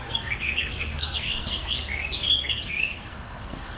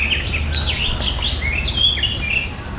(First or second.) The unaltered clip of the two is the second